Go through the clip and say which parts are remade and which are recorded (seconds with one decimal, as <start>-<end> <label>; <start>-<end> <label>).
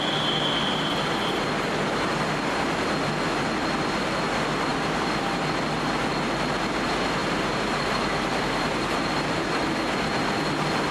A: 0.0-4.7 recorded; 4.7-5.4 remade; 5.4-7.2 recorded; 7.2-9.6 remade; 9.6-10.9 recorded